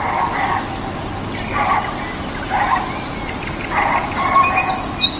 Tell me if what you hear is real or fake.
real